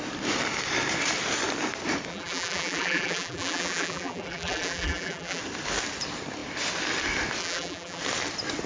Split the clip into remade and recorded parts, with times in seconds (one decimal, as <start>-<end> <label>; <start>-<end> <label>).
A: 0.0-2.1 recorded; 2.1-5.4 remade; 5.4-7.4 recorded; 7.4-8.0 remade; 8.0-8.7 recorded